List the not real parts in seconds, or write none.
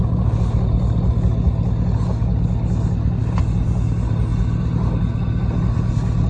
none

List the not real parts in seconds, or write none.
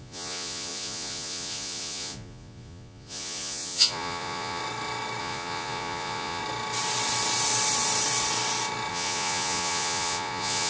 0.0-4.6 (vocoder, Vocos); 5.2-6.4; 8.9-10.7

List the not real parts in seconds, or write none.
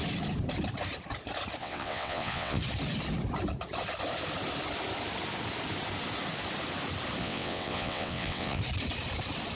1.6-2.6 (vocoder, WaveNeXt); 7.2-8.6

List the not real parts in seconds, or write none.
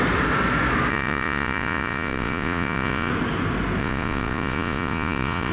0.9-3.1 (vocoder, Vocos); 3.8-5.5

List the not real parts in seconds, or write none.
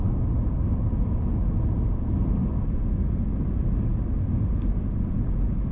none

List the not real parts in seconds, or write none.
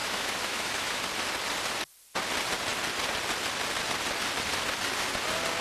0.0-1.0 (autoencoder, DAC-VAE)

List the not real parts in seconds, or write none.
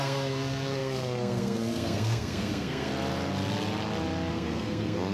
0.0-2.9 (codec, SNAC); 4.3-5.1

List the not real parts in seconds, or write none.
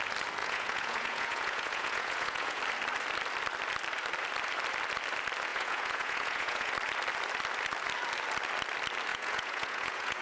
0.4-2.6 (vocoder, Vocos); 5.5-6.7; 9.1-10.2